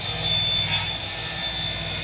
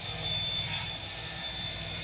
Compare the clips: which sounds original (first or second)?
first